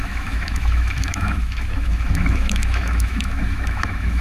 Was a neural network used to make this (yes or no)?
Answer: yes